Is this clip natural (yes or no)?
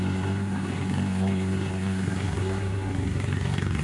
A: no